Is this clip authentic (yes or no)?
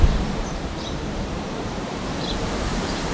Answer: no